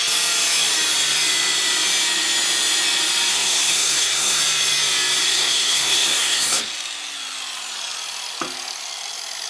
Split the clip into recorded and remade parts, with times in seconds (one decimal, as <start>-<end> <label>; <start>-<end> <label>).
0.0-3.3 recorded; 3.3-4.4 remade; 4.4-5.2 recorded; 5.2-6.6 remade; 6.6-9.5 recorded

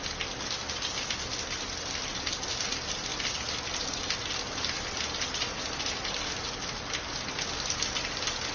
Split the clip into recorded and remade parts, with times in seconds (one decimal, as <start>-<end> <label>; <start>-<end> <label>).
0.0-8.5 recorded

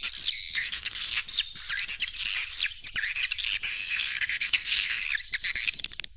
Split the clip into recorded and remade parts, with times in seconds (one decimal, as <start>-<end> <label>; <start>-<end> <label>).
0.0-0.5 recorded; 0.5-1.2 remade; 1.2-3.7 recorded; 3.7-5.0 remade; 5.0-6.2 recorded

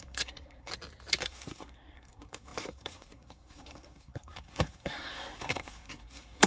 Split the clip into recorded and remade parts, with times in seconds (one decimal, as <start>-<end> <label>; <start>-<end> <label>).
0.0-0.7 remade; 0.7-1.2 recorded; 1.2-6.5 remade

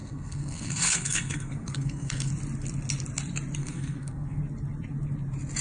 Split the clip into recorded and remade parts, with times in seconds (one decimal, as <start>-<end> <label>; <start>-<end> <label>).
0.0-2.3 remade; 2.3-3.6 recorded; 3.6-4.4 remade; 4.4-5.6 recorded